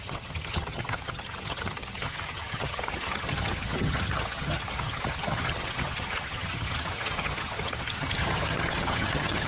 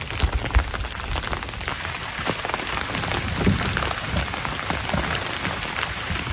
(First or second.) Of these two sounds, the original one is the second